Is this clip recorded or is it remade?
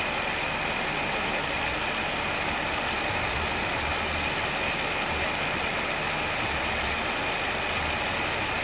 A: recorded